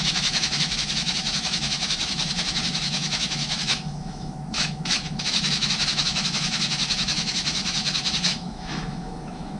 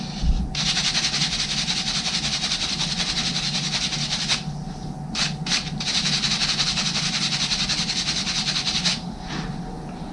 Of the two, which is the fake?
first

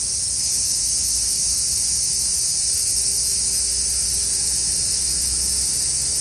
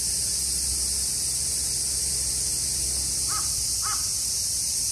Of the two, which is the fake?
first